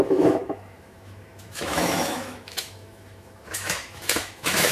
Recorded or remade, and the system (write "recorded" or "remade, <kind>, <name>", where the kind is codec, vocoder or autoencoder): remade, autoencoder, DAC-VAE